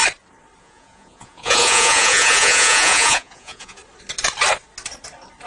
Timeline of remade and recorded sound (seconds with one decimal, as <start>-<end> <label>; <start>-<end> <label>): 0.0-0.6 recorded; 0.6-3.8 remade; 3.8-5.5 recorded